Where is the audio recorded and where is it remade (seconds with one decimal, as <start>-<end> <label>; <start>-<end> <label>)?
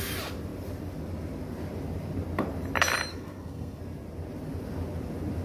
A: 0.0-3.1 recorded; 3.1-3.8 remade; 3.8-5.4 recorded